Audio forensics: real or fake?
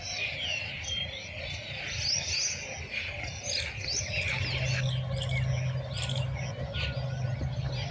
real